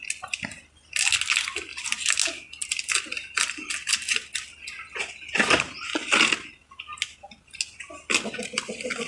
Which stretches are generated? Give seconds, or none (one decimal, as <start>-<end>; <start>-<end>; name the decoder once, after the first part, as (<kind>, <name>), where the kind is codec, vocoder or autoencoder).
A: none